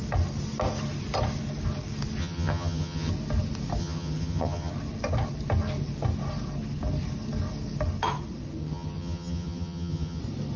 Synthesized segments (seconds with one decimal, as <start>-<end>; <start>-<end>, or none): 2.2-3.1; 3.8-4.7; 8.6-10.2